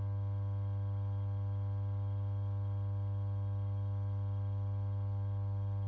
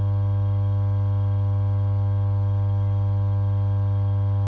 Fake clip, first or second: first